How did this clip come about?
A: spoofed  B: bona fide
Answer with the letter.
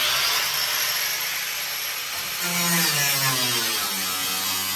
B